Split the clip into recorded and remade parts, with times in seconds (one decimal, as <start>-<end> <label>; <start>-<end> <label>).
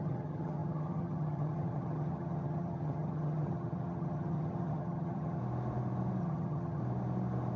0.0-5.4 remade; 5.4-6.2 recorded; 6.2-6.8 remade; 6.8-7.6 recorded